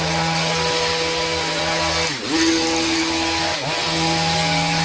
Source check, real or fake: real